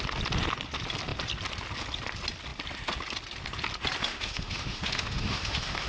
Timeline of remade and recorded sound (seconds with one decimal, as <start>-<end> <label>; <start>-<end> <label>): 0.0-4.0 recorded; 4.0-5.9 remade